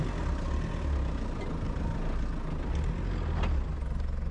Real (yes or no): yes